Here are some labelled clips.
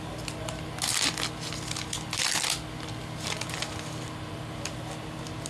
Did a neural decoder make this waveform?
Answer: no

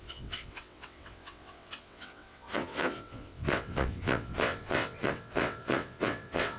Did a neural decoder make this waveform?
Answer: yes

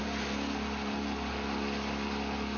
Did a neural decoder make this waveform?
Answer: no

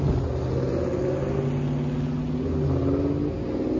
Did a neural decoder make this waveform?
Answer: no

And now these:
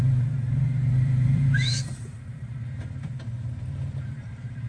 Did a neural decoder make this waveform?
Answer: yes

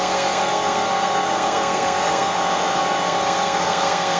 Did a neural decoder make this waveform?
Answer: yes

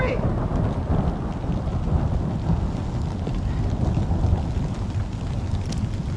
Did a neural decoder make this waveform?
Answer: no